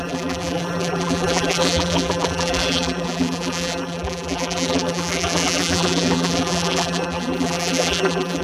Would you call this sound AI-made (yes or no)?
yes